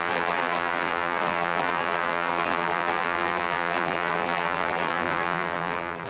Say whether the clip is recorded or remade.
remade